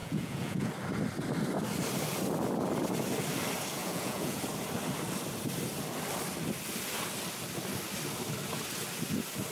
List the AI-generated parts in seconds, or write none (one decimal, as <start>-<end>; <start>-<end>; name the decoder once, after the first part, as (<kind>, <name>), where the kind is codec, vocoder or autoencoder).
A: 0.0-0.7 (vocoder, Vocos); 3.8-4.4